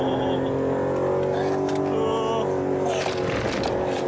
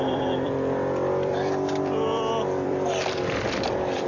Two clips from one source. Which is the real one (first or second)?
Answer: first